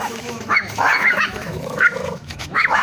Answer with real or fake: fake